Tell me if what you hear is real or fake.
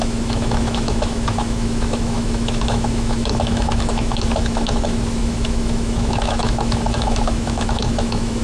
fake